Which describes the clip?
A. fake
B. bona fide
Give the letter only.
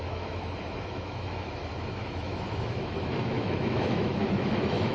A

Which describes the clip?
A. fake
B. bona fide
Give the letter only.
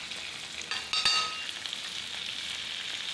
B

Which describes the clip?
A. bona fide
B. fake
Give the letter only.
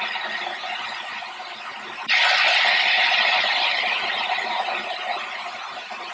A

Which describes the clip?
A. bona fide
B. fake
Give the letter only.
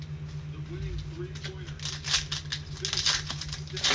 A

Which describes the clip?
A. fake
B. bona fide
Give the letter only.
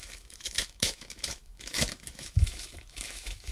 A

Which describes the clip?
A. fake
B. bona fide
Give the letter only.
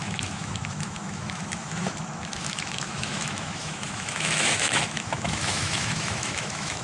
A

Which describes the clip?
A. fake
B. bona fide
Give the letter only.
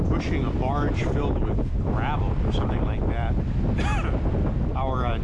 B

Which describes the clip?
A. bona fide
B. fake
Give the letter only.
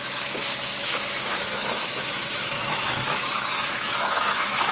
B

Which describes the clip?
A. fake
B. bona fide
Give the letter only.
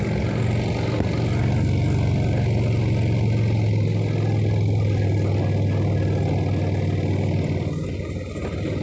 B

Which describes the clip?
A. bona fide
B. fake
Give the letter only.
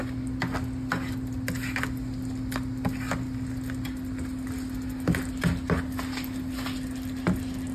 A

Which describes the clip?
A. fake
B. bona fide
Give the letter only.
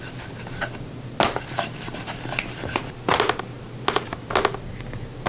B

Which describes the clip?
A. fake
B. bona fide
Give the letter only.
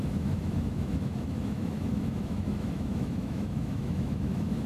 A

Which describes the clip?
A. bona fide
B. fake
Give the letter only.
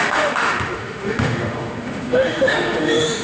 B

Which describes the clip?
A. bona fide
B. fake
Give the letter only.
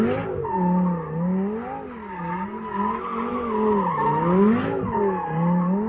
A